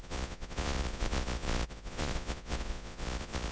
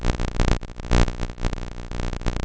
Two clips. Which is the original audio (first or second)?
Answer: second